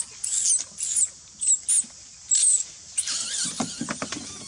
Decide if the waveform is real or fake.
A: real